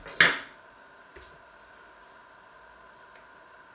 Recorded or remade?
recorded